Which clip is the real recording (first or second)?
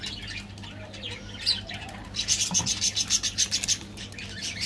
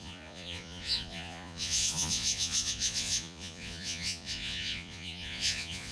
first